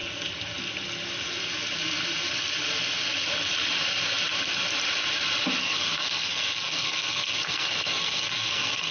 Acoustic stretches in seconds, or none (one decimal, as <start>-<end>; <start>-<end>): 0.0-5.6